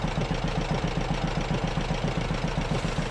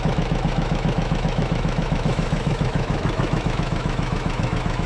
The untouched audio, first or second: first